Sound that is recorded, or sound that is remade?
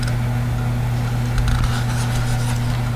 recorded